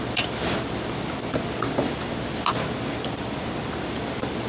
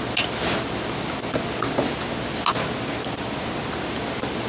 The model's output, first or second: first